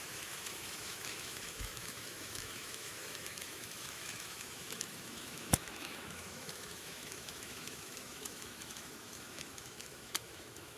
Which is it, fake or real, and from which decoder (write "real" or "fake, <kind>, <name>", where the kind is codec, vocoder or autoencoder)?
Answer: fake, autoencoder, DAC-VAE